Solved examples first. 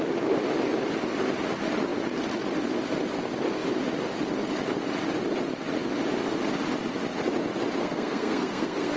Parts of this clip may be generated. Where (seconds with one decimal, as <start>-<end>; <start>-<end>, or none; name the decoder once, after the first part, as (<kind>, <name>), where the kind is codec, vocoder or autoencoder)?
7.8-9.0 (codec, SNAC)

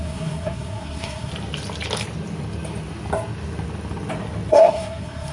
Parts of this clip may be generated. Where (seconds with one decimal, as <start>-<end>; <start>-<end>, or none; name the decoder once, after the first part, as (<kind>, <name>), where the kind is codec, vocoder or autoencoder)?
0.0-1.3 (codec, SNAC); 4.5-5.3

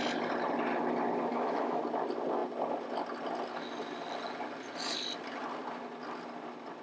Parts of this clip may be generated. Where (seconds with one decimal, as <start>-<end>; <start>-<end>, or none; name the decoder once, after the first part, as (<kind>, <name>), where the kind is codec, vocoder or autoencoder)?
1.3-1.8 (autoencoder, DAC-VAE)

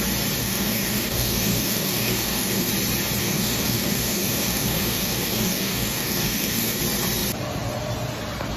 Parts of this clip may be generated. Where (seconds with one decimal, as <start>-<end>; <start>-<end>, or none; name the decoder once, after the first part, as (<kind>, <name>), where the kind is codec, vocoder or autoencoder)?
0.4-2.7 (codec, DAC); 3.2-6.8